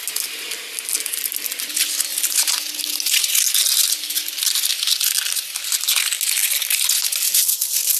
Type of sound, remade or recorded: recorded